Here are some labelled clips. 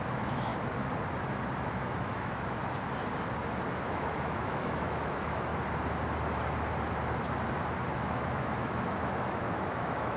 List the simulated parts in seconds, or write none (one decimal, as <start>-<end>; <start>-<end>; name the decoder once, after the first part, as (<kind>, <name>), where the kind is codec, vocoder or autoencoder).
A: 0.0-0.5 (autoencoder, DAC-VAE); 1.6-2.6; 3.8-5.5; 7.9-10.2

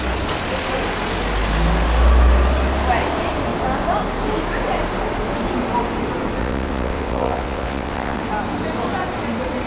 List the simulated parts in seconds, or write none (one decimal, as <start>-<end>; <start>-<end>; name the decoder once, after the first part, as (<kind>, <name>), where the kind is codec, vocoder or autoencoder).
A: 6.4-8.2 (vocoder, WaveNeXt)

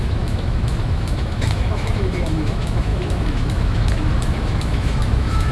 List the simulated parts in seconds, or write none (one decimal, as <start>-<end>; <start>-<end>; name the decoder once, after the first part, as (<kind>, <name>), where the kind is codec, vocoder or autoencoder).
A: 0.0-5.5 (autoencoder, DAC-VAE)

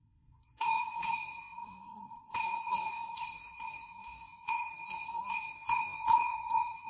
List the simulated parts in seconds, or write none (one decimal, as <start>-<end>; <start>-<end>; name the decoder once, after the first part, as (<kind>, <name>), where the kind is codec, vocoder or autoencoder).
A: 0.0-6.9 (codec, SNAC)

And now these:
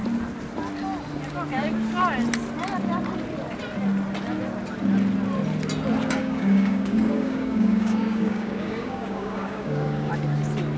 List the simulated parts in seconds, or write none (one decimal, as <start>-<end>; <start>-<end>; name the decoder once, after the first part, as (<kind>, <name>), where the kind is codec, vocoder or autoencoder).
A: 6.2-10.1 (codec, DAC)